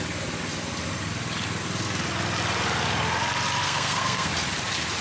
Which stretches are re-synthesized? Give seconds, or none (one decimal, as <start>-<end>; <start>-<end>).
3.6-4.3

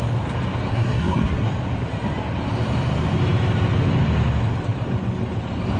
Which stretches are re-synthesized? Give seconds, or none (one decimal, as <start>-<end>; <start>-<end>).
0.7-1.5

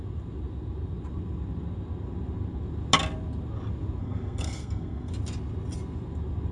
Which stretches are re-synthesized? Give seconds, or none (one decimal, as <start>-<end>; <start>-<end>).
4.0-5.1

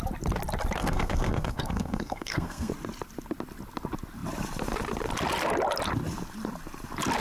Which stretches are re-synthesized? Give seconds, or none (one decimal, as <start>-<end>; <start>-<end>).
0.8-2.7

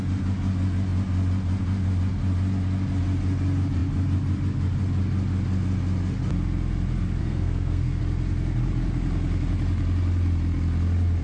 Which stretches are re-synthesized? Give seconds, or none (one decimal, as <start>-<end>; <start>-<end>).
7.2-8.0

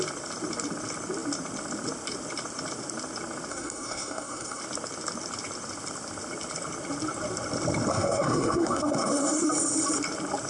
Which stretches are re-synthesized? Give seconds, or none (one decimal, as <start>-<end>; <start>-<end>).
3.5-4.6; 7.9-9.5